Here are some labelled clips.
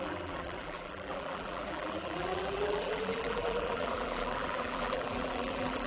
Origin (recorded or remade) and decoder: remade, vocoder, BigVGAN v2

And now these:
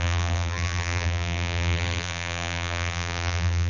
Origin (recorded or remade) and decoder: remade, vocoder, BigVGAN v2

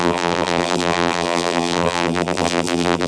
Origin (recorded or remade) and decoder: remade, vocoder, BigVGAN v2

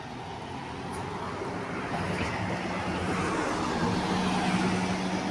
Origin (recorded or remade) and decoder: recorded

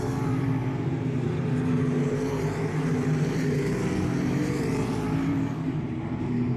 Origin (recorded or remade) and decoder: remade, vocoder, BigVGAN v2